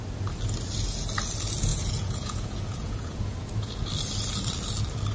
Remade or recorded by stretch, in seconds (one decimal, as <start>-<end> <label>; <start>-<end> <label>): 0.0-1.7 recorded; 1.7-3.9 remade; 3.9-5.1 recorded